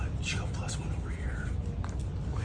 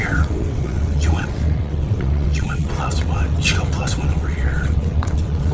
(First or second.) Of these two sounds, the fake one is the second